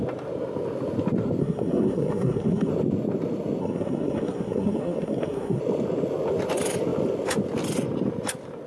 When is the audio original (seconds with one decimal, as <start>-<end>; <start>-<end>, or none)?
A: 0.0-1.4; 2.7-3.6; 5.6-8.7